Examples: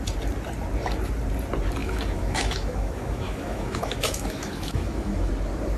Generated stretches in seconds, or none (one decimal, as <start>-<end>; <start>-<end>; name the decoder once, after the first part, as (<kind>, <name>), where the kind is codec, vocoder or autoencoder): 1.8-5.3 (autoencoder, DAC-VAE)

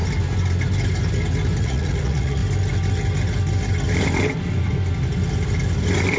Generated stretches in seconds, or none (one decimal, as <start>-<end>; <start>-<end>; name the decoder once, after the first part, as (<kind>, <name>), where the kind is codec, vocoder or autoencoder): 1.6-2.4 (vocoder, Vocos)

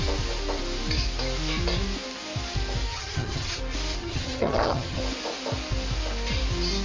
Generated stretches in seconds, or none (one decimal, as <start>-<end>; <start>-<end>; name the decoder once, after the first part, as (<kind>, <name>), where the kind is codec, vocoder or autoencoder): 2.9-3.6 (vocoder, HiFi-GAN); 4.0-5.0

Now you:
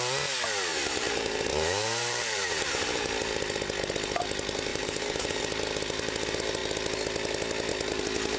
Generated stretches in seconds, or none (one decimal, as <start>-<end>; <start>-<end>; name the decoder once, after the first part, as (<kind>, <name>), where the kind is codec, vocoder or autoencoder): 0.7-3.4 (vocoder, BigVGAN v2); 4.7-5.4

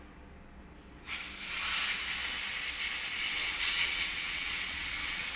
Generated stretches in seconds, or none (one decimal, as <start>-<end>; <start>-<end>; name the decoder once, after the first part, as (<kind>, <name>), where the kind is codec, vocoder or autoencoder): 3.3-5.4 (vocoder, WaveNeXt)

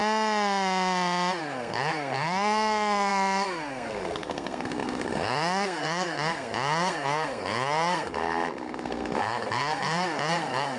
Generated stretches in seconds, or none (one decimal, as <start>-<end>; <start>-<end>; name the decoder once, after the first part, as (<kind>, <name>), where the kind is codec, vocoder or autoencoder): 1.4-10.8 (codec, SNAC)

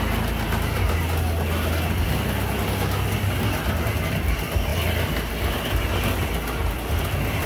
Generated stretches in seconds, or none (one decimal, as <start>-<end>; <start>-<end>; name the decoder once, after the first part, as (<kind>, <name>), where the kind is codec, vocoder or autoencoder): none

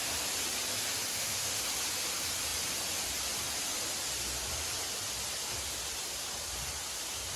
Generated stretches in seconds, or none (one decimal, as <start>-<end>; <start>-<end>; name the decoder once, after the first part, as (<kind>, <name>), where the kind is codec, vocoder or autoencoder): 1.1-1.6 (autoencoder, DAC-VAE)